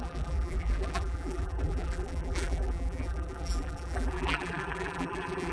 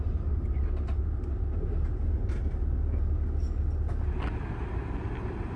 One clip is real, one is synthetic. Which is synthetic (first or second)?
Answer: first